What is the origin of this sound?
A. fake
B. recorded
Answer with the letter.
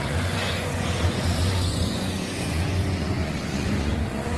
A